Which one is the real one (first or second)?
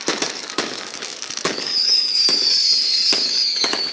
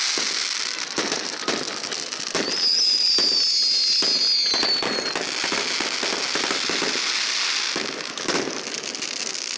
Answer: second